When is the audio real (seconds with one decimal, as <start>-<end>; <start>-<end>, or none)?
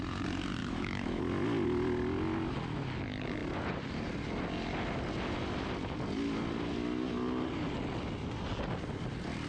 0.0-0.6; 1.2-9.5